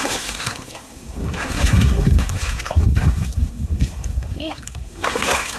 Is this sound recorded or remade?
remade